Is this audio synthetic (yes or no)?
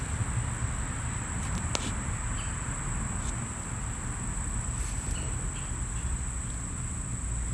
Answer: no